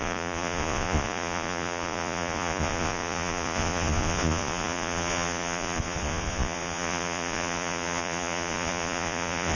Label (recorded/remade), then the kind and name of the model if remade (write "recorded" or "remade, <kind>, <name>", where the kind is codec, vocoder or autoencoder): remade, vocoder, Vocos